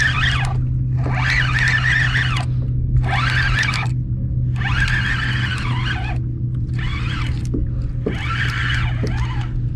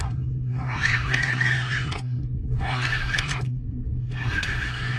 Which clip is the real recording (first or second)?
first